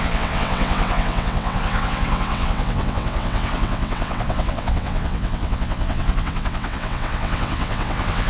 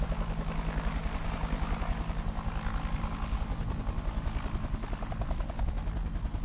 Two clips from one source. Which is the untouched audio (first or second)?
second